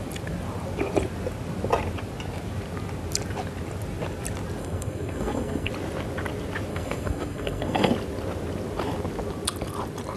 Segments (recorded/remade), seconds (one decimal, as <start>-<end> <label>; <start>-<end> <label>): 0.0-4.6 recorded; 4.6-5.7 remade; 5.7-6.7 recorded; 6.7-7.9 remade; 7.9-10.2 recorded